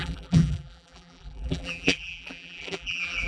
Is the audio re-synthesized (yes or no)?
yes